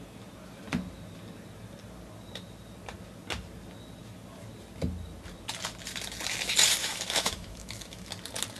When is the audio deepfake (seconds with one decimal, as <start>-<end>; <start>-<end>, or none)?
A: 6.8-8.1